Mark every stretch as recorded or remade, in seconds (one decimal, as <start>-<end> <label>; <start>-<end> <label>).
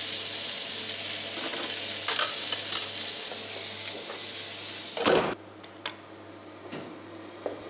0.0-7.7 recorded